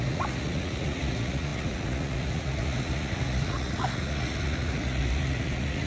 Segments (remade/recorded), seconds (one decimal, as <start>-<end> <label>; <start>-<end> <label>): 0.0-5.9 remade

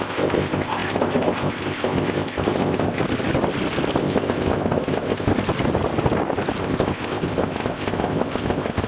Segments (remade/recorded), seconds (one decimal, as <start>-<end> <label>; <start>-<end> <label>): 0.0-3.0 remade; 3.0-4.0 recorded; 4.0-5.3 remade; 5.3-6.6 recorded; 6.6-8.9 remade